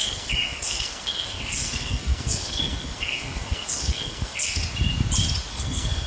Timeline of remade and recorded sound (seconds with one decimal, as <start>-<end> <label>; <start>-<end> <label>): 0.0-4.6 remade; 4.6-5.5 recorded; 5.5-6.1 remade